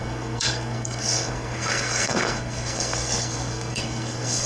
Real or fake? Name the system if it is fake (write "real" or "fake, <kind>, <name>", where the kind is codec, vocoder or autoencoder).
fake, codec, SNAC